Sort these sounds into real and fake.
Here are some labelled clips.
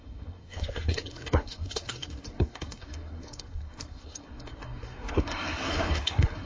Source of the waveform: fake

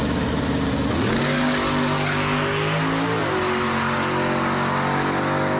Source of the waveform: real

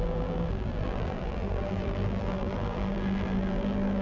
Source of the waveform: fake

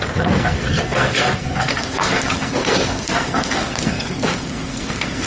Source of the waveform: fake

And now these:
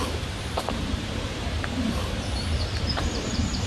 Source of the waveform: fake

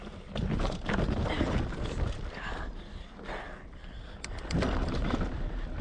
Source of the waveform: real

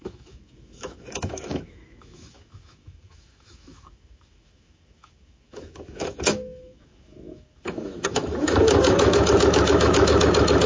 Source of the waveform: fake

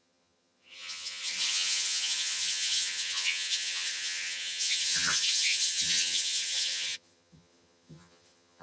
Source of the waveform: fake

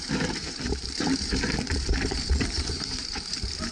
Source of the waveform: fake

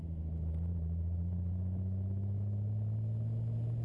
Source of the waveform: real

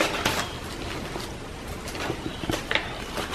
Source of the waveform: real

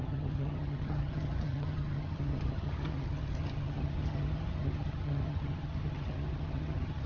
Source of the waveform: fake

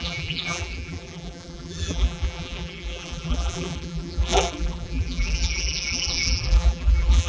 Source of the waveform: fake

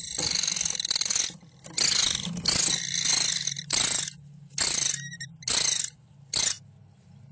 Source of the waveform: real